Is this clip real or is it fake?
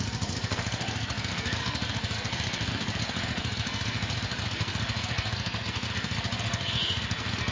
fake